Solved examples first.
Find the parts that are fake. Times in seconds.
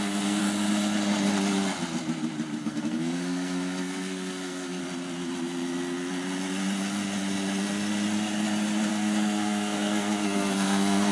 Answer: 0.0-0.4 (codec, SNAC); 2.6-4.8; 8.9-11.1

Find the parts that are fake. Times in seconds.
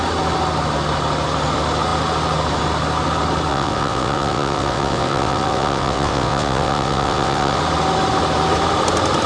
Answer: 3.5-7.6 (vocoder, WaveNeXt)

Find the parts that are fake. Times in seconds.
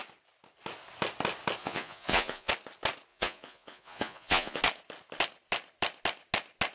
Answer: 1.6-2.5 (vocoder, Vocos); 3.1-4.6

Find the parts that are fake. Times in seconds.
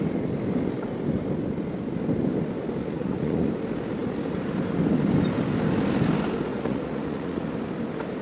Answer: 2.8-3.5 (vocoder, Vocos); 6.5-7.5